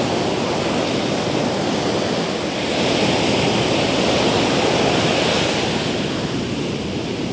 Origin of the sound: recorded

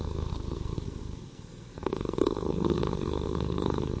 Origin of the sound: remade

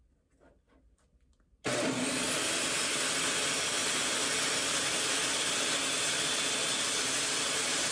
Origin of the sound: recorded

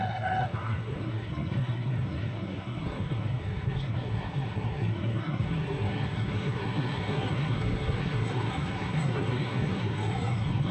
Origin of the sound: remade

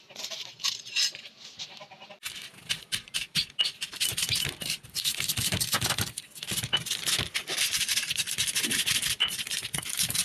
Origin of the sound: recorded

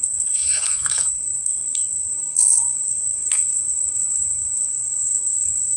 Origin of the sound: remade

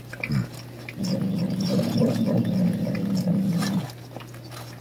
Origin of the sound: recorded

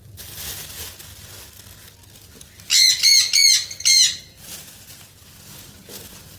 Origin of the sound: recorded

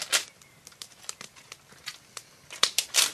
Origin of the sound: recorded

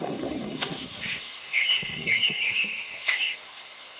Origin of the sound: remade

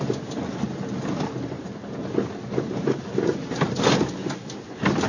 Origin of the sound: recorded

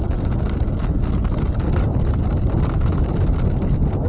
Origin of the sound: recorded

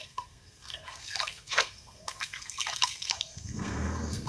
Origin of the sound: remade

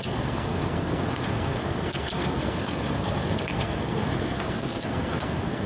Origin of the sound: remade